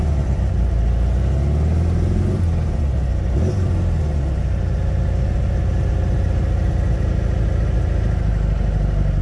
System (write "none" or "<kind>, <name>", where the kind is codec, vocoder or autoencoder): none